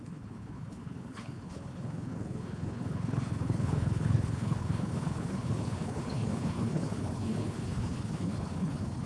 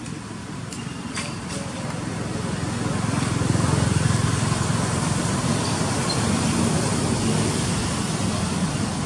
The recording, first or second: second